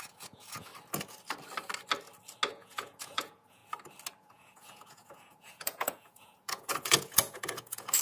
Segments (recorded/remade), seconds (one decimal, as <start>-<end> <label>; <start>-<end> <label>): 0.0-0.7 remade; 0.7-2.5 recorded; 2.5-3.6 remade; 3.6-4.2 recorded; 4.2-8.0 remade